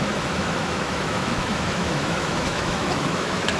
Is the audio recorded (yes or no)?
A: no